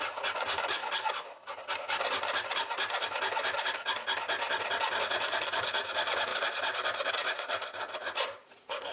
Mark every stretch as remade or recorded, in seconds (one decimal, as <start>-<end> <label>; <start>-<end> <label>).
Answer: 0.0-0.8 remade; 0.8-5.0 recorded; 5.0-6.3 remade; 6.3-7.1 recorded; 7.1-8.9 remade